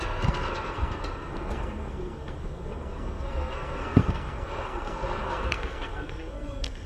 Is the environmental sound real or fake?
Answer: fake